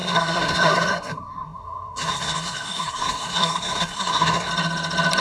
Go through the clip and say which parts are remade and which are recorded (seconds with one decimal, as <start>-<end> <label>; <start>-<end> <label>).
0.0-4.5 remade; 4.5-5.2 recorded